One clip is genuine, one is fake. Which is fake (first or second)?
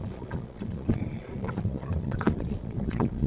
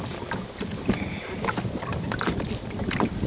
first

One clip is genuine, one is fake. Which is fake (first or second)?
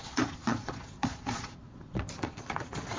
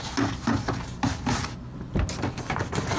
first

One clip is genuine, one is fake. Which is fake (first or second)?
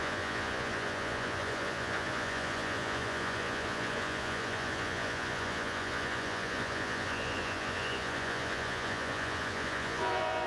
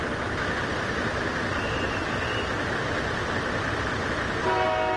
first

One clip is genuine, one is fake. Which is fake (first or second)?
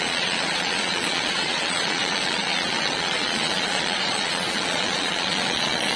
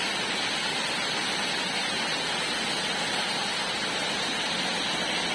first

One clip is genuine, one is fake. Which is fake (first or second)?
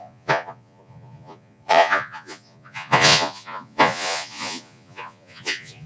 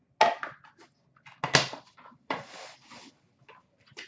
first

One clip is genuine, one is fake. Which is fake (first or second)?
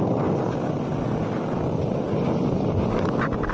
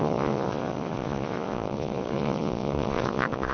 second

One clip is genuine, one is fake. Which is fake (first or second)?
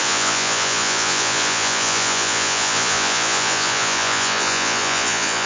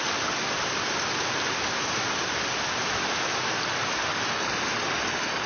first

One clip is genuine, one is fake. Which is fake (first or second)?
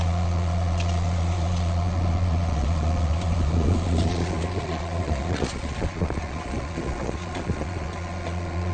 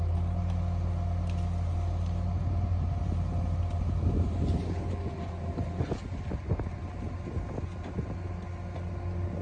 first